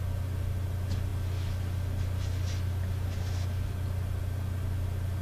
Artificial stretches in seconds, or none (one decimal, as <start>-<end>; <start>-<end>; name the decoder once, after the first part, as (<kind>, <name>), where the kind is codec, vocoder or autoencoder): none